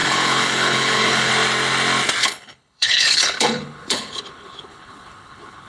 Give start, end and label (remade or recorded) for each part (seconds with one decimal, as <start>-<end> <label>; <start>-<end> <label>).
0.0-1.3 remade; 1.3-2.2 recorded; 2.2-5.7 remade

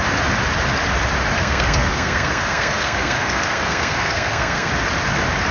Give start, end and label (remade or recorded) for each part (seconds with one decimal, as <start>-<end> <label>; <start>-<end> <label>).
0.0-1.4 recorded; 1.4-4.7 remade; 4.7-5.5 recorded

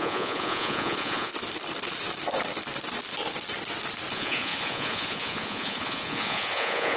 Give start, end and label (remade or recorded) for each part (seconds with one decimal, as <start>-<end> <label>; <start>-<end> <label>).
0.0-1.3 remade; 1.3-4.1 recorded; 4.1-7.0 remade

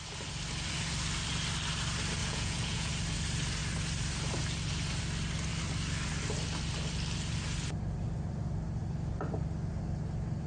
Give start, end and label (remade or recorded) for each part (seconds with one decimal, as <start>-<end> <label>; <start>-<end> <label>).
0.0-2.2 recorded; 2.2-2.9 remade; 2.9-10.5 recorded

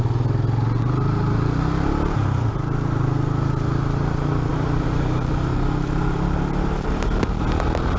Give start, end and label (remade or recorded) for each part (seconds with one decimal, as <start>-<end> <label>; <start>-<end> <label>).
0.0-4.5 recorded; 4.5-5.2 remade; 5.2-8.0 recorded

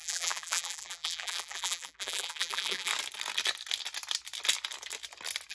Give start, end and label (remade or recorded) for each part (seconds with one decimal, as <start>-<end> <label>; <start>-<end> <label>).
0.0-2.9 remade; 2.9-5.5 recorded

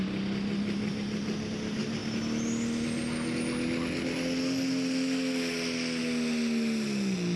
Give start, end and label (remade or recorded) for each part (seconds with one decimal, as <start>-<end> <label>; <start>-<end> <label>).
0.0-7.4 recorded

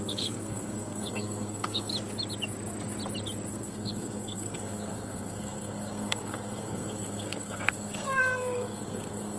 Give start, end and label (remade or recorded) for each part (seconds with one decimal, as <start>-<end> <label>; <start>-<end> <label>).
0.0-1.9 remade; 1.9-3.5 recorded; 3.5-9.4 remade